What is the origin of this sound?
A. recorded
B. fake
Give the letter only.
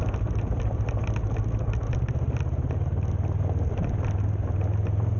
A